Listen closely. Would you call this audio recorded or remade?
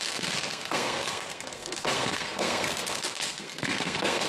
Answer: remade